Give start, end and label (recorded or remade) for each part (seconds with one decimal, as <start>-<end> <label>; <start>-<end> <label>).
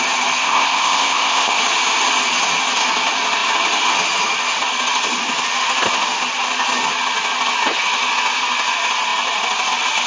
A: 0.0-0.4 recorded; 0.4-1.6 remade; 1.6-10.1 recorded